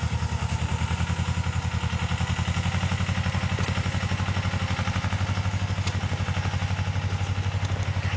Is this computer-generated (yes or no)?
no